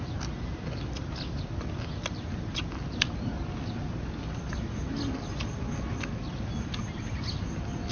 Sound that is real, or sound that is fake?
real